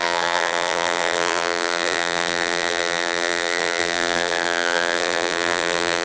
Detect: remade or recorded remade